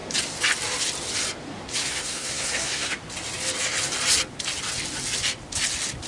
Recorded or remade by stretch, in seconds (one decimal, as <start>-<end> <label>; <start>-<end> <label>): 0.0-1.8 recorded; 1.8-3.0 remade; 3.0-6.1 recorded